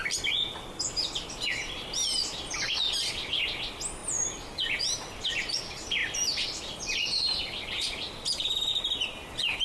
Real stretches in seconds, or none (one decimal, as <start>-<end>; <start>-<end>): 0.0-9.6